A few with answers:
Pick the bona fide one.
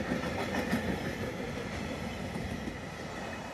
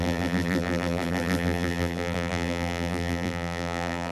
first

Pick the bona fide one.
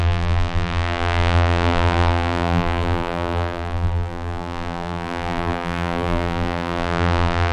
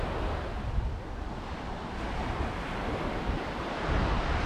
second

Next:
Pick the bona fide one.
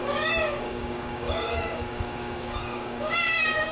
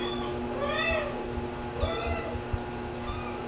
second